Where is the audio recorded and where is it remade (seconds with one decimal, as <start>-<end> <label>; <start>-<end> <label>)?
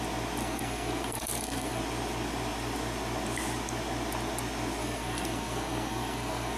0.0-0.4 recorded; 0.4-1.8 remade; 1.8-4.8 recorded; 4.8-6.6 remade